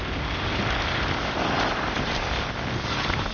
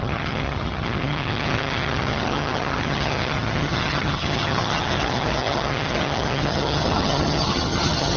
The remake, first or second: second